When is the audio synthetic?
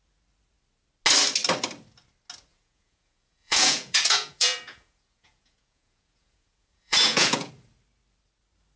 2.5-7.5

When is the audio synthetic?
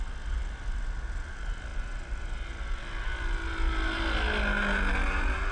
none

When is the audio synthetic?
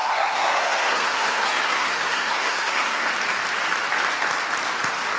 0.0-3.1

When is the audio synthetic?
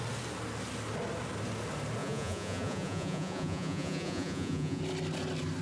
2.0-4.8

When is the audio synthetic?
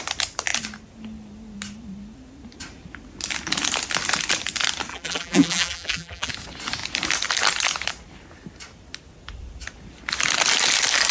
4.9-6.3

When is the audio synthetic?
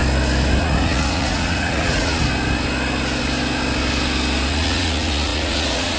0.6-2.2; 4.5-6.0